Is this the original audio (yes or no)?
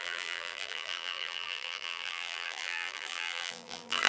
no